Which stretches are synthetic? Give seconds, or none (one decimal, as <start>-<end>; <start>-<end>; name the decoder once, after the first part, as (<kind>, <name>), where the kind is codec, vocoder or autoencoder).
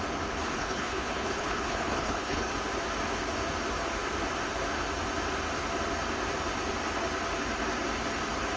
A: 0.6-2.5 (codec, HILCodec)